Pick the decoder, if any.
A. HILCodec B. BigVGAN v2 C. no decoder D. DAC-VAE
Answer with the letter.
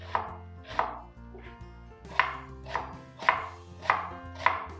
C